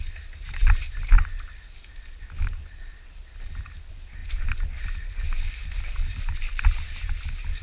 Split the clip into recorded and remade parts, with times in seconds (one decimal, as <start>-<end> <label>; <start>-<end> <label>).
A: 0.0-7.6 recorded